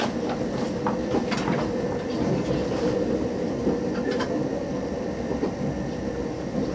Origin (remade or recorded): recorded